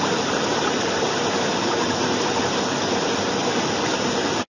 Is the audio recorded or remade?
recorded